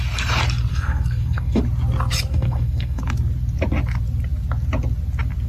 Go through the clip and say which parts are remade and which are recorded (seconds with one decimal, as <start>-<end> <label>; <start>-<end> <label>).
0.0-0.7 recorded; 0.7-1.6 remade; 1.6-2.3 recorded; 2.3-3.0 remade; 3.0-5.5 recorded